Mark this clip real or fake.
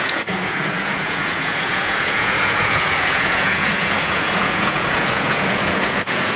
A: fake